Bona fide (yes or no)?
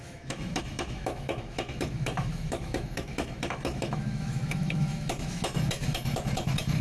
no